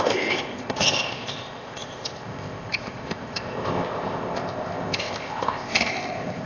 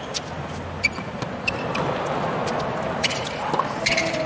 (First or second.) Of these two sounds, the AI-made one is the first